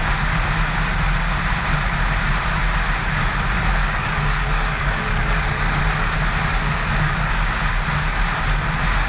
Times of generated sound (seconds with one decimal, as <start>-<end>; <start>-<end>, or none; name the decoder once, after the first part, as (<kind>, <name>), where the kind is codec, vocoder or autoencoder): 3.8-5.8 (codec, DAC); 6.5-7.3